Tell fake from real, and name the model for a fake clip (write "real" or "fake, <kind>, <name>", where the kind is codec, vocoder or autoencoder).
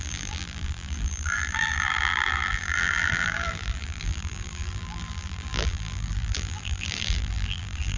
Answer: fake, vocoder, BigVGAN v2